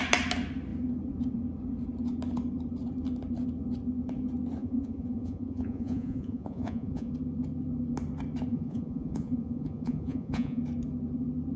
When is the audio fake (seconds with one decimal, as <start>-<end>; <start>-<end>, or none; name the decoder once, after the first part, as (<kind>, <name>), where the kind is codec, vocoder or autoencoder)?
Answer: 4.6-7.1 (vocoder, Vocos); 8.5-10.6